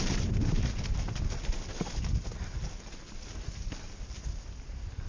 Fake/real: real